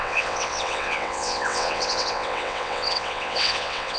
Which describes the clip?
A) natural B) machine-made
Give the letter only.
B